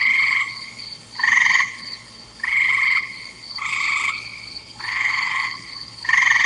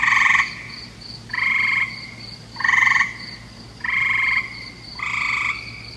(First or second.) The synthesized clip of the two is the first